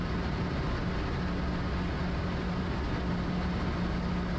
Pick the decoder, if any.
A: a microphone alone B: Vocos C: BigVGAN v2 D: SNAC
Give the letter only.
A